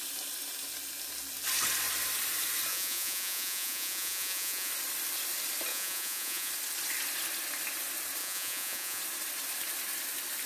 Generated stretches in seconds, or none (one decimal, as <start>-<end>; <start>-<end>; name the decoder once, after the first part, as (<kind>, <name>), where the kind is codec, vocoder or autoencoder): 2.7-4.7 (vocoder, Vocos); 5.7-6.5; 8.2-9.0